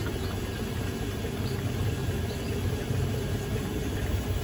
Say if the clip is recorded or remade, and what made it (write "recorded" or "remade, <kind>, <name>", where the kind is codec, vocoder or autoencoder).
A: remade, vocoder, BigVGAN v2